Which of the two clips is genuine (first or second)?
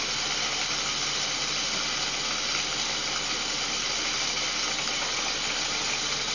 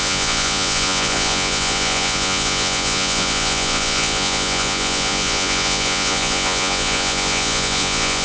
first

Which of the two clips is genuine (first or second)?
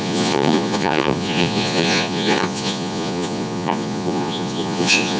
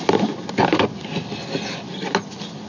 second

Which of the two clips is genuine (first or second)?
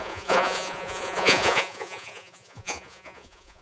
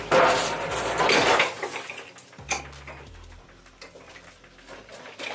second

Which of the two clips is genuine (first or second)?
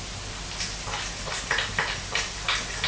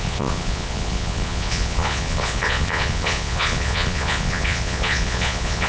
first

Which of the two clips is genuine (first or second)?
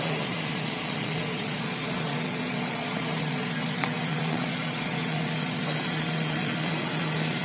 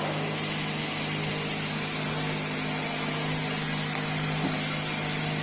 second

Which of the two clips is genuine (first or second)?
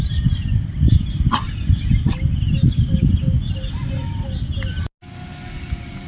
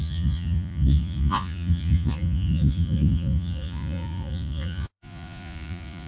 first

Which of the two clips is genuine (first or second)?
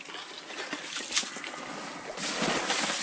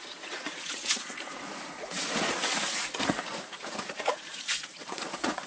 first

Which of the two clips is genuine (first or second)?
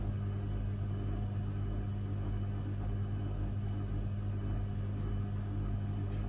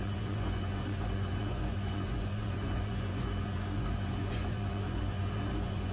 first